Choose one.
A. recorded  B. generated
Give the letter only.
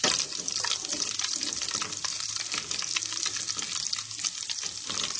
A